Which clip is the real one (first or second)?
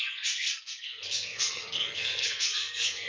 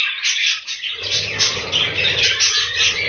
second